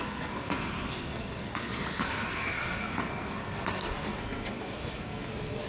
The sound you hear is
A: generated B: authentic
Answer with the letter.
A